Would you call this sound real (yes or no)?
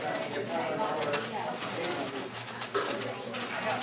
yes